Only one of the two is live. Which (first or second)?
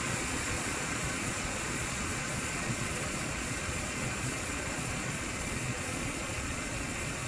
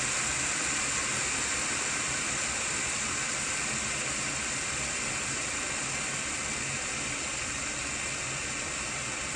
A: second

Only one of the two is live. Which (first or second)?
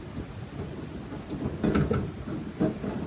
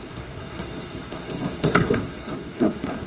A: first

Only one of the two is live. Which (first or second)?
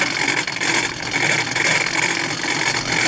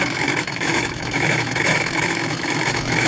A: first